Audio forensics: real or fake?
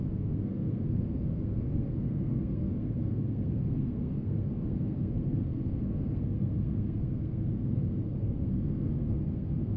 fake